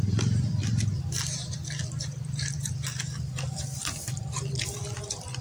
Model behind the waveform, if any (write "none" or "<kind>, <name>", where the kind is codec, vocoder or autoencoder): vocoder, BigVGAN v2